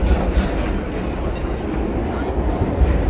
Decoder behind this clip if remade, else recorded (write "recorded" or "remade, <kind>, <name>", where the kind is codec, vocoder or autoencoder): recorded